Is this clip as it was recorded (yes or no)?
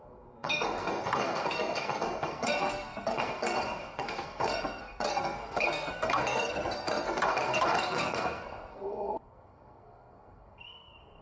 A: no